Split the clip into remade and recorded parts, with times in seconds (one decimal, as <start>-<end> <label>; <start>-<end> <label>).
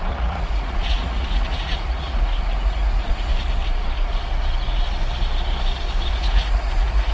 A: 0.0-3.3 remade; 3.3-6.1 recorded; 6.1-7.1 remade